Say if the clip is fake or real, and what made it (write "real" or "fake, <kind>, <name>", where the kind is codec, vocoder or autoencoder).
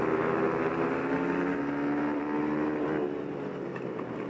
real